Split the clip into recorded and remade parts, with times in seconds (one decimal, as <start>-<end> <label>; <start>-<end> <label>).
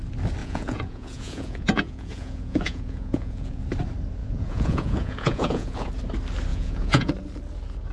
0.0-0.4 recorded; 0.4-3.6 remade; 3.6-4.2 recorded; 4.2-5.9 remade; 5.9-6.5 recorded; 6.5-7.1 remade; 7.1-7.9 recorded